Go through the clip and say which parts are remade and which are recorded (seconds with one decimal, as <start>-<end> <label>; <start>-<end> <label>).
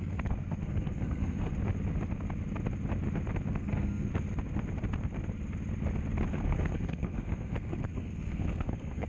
0.0-1.5 remade; 1.5-3.5 recorded; 3.5-4.1 remade; 4.1-6.3 recorded; 6.3-9.1 remade